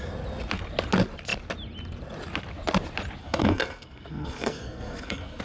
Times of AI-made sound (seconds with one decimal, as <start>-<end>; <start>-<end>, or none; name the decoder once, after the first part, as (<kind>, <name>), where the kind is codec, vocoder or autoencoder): 3.2-5.4 (codec, SNAC)

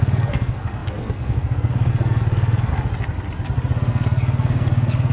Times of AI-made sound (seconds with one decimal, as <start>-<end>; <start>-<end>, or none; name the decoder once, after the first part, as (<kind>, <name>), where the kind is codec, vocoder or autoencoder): 0.0-2.7 (codec, SNAC); 3.9-5.1

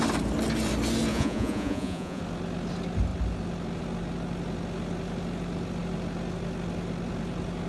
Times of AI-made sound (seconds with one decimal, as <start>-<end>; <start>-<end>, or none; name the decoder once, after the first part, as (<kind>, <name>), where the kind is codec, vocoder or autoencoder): 1.1-2.2 (vocoder, Vocos)